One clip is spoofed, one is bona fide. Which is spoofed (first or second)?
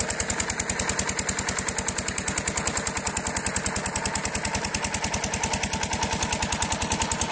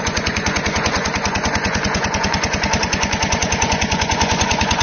second